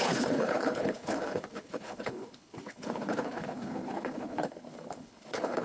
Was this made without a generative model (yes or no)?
no